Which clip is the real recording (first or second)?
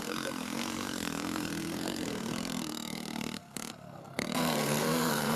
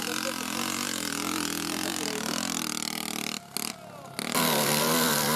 second